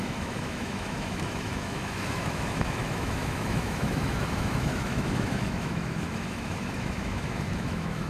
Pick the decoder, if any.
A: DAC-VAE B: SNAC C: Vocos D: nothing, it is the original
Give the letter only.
A